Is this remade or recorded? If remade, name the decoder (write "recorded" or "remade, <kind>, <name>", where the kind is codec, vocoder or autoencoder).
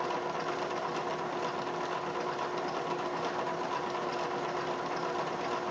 recorded